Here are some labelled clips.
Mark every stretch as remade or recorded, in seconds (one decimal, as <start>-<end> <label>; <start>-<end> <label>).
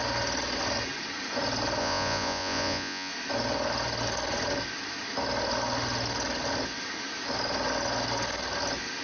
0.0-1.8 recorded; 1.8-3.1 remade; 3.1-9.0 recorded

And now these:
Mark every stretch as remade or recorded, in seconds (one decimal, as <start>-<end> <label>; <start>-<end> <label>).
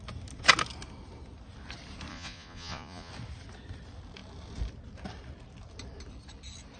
0.0-2.1 recorded; 2.1-3.1 remade; 3.1-6.8 recorded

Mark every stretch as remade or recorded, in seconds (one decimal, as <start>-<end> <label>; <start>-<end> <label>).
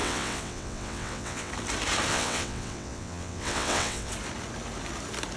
0.0-1.5 remade; 1.5-2.1 recorded; 2.1-4.1 remade; 4.1-5.4 recorded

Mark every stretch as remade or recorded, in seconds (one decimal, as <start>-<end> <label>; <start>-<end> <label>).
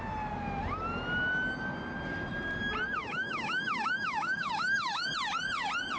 0.0-3.0 recorded; 3.0-5.1 remade; 5.1-6.0 recorded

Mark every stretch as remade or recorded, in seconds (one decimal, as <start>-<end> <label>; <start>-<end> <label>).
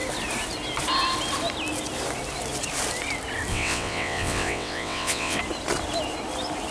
0.0-3.5 recorded; 3.5-5.4 remade; 5.4-6.7 recorded